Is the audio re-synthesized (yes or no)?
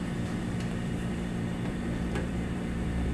yes